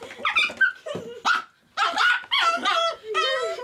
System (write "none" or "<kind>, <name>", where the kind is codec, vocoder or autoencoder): none